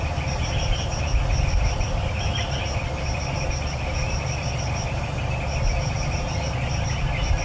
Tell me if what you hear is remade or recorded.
recorded